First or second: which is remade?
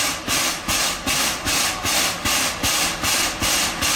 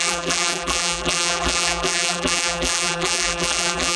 second